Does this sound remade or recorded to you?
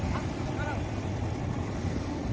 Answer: recorded